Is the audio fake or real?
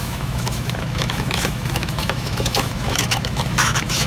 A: fake